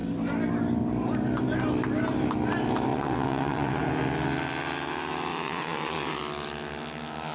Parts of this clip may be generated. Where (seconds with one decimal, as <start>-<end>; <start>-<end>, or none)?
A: 2.9-3.8; 5.3-6.2